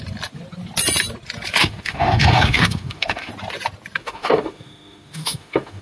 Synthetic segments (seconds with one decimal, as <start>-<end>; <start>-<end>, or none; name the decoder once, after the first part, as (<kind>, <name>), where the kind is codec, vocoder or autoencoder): 1.6-3.3 (autoencoder, DAC-VAE); 4.0-5.8